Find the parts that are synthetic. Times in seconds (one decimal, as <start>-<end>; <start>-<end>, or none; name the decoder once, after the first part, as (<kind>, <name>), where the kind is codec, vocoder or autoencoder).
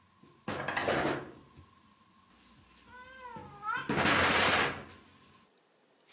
none